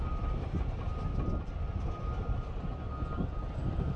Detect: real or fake real